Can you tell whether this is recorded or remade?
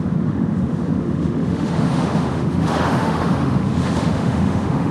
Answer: remade